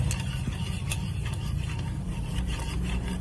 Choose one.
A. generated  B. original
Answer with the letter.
B